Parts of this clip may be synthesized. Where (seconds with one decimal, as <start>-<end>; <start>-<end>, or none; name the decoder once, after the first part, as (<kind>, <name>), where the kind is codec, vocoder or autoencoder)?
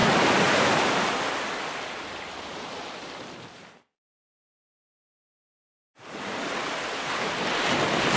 0.0-1.3 (vocoder, BigVGAN v2)